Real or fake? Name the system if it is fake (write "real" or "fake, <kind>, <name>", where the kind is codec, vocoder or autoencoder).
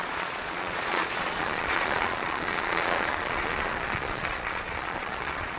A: fake, vocoder, Vocos